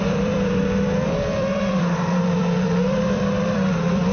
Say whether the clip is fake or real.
fake